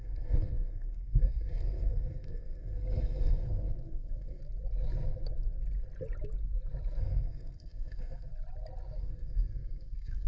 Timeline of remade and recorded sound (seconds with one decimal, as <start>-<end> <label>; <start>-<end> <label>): 0.0-4.4 remade; 4.4-7.0 recorded; 7.0-8.3 remade; 8.3-9.0 recorded; 9.0-10.3 remade